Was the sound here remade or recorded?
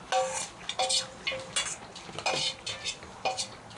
recorded